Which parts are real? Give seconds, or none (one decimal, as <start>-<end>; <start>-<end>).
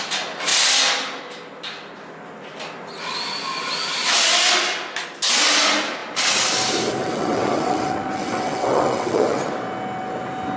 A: 0.0-7.0; 9.5-10.6